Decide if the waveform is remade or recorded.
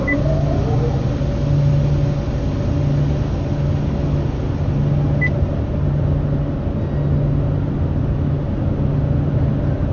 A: recorded